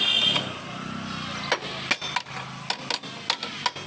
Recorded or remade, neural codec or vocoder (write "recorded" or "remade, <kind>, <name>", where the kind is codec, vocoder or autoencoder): recorded